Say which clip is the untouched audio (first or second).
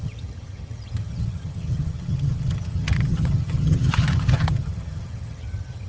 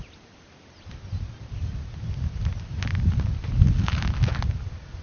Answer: second